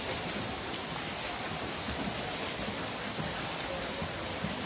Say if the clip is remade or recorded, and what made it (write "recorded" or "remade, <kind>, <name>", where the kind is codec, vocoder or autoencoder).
recorded